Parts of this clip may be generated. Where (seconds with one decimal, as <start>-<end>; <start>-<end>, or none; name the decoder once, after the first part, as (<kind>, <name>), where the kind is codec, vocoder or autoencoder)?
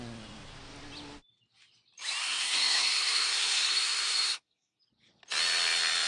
2.2-4.8 (codec, SNAC)